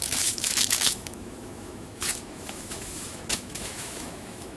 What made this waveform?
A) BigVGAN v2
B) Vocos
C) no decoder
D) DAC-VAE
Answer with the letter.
D